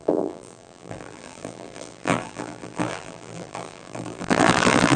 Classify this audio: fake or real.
fake